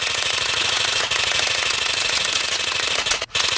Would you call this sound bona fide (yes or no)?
no